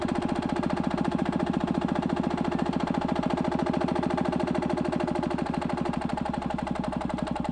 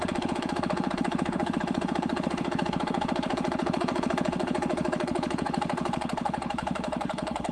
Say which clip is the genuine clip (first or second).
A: first